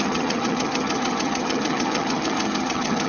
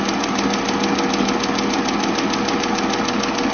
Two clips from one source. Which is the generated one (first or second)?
first